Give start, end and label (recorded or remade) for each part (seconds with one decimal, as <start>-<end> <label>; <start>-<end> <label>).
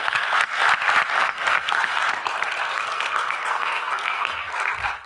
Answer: 0.0-0.6 remade; 0.6-1.1 recorded; 1.1-2.1 remade; 2.1-2.6 recorded; 2.6-5.1 remade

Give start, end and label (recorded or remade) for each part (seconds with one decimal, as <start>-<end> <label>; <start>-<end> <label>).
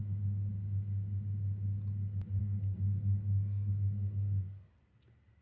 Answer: 0.0-2.4 recorded; 2.4-4.7 remade; 4.7-5.4 recorded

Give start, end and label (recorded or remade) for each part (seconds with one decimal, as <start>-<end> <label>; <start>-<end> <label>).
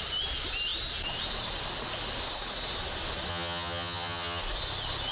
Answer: 0.0-3.3 recorded; 3.3-4.4 remade; 4.4-5.1 recorded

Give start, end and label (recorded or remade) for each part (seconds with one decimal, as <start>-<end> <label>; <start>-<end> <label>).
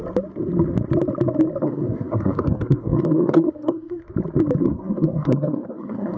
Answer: 0.0-1.6 recorded; 1.6-4.0 remade; 4.0-4.6 recorded; 4.6-6.2 remade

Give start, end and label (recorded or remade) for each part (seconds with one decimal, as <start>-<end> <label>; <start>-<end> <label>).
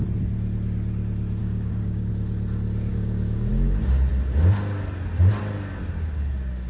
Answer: 0.0-1.4 recorded; 1.4-2.1 remade; 2.1-2.9 recorded; 2.9-3.5 remade; 3.5-6.7 recorded